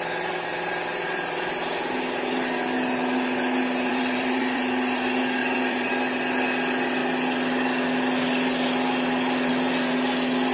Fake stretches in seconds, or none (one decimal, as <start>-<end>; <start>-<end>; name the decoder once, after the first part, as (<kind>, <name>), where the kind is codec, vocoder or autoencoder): 3.9-4.6 (vocoder, BigVGAN v2); 5.4-5.9